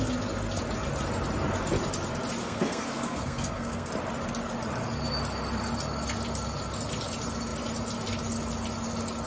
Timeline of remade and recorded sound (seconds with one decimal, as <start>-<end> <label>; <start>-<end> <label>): 0.0-2.4 recorded; 2.4-3.9 remade; 3.9-9.3 recorded